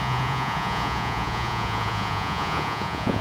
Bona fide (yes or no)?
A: no